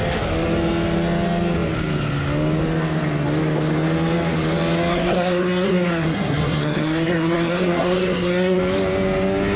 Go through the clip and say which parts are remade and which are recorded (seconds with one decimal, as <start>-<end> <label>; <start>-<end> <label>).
0.0-4.9 recorded; 4.9-8.6 remade; 8.6-9.6 recorded